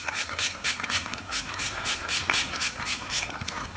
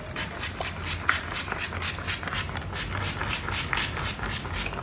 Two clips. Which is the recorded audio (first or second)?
second